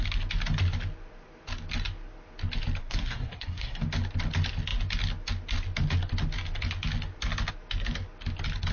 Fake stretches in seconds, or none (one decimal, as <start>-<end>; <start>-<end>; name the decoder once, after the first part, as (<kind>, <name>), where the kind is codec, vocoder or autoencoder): 2.8-3.8 (codec, SNAC)